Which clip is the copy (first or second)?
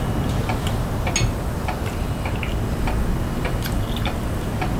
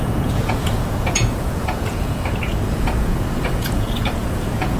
second